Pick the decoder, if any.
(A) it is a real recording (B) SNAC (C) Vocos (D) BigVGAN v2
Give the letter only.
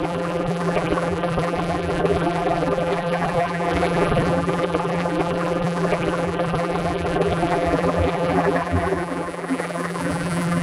D